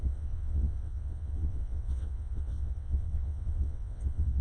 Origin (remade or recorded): remade